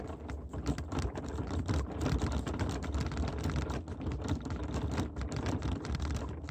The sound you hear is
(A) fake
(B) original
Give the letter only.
B